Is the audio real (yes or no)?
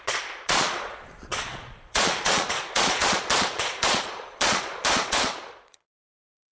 no